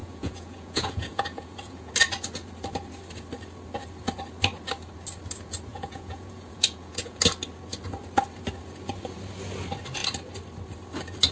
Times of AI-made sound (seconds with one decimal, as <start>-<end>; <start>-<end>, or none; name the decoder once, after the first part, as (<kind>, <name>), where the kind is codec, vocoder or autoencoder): 0.0-1.9 (vocoder, Vocos); 5.7-7.2